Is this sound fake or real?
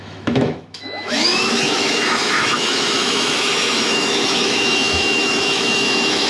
fake